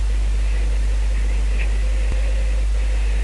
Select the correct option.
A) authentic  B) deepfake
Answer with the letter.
A